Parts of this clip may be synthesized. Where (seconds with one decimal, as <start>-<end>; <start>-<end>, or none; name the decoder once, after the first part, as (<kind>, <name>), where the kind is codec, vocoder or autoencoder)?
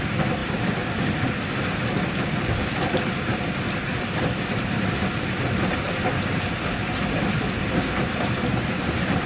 0.0-9.3 (vocoder, BigVGAN v2)